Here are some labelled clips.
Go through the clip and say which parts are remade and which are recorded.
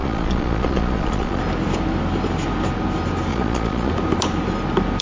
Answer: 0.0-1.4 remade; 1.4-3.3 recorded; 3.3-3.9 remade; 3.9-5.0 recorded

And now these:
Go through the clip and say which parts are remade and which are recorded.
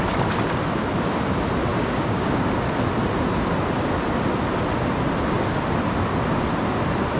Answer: 0.0-1.7 recorded; 1.7-2.6 remade; 2.6-7.2 recorded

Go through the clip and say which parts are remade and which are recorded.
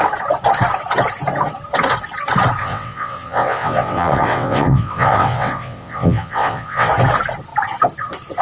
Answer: 0.0-2.6 recorded; 2.6-6.9 remade; 6.9-8.4 recorded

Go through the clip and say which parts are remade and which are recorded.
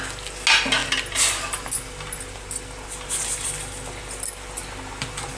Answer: 0.0-5.4 recorded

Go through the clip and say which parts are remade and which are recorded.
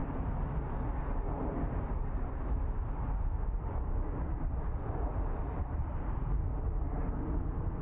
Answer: 0.0-7.8 recorded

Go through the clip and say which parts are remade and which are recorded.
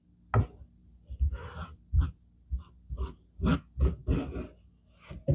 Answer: 0.0-5.3 recorded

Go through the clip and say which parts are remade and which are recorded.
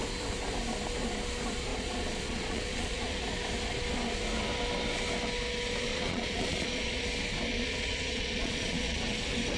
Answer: 0.0-1.7 recorded; 1.7-3.2 remade; 3.2-5.9 recorded; 5.9-7.0 remade; 7.0-7.5 recorded; 7.5-9.0 remade; 9.0-9.6 recorded